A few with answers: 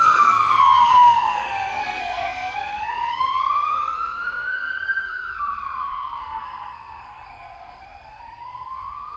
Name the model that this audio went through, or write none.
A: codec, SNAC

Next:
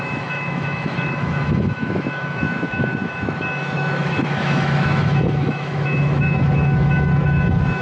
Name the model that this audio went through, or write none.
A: autoencoder, DAC-VAE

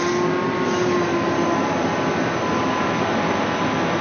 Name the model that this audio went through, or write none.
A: none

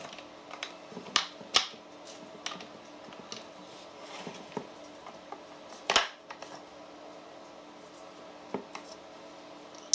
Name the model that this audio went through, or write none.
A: none